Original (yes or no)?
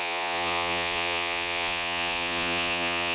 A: no